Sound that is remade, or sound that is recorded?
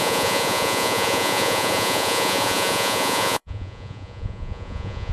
remade